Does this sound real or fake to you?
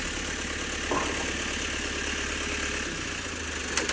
real